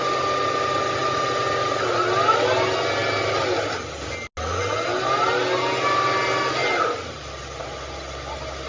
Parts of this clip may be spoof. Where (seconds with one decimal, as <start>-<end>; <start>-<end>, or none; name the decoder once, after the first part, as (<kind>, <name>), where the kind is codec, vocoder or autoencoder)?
none